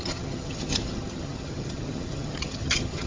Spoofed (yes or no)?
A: yes